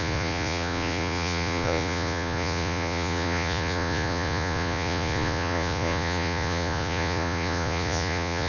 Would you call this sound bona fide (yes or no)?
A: no